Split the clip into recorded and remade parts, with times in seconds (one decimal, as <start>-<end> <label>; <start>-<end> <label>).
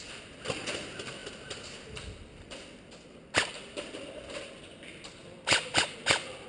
0.0-6.5 recorded